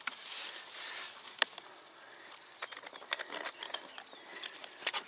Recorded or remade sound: recorded